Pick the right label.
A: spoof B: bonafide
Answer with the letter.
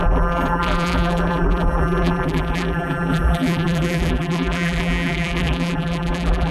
A